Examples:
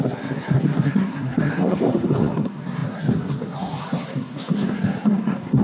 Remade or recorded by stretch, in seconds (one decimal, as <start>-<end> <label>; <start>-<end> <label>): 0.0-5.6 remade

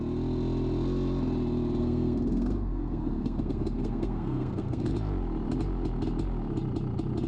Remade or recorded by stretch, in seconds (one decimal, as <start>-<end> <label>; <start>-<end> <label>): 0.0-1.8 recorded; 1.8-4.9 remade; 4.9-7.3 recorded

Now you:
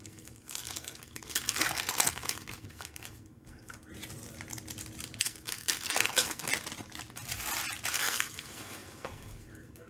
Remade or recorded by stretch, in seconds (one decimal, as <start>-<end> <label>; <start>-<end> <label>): 0.0-3.9 remade; 3.9-5.2 recorded; 5.2-6.5 remade; 6.5-7.9 recorded; 7.9-9.9 remade